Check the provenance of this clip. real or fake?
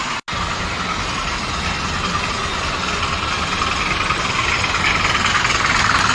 real